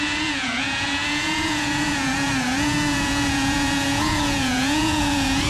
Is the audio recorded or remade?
remade